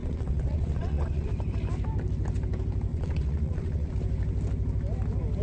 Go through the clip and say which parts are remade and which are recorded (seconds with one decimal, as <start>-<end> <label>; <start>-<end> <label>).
0.0-1.3 remade; 1.3-2.9 recorded; 2.9-3.9 remade; 3.9-5.4 recorded